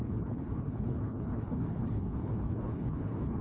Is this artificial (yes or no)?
yes